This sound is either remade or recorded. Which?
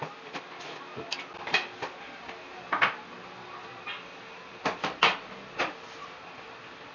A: recorded